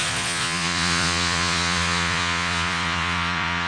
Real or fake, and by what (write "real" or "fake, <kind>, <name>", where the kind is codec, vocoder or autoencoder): fake, vocoder, Vocos